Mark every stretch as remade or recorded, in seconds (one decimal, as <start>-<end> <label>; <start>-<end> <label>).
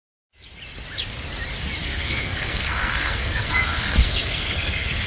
0.0-1.8 recorded; 1.8-5.1 remade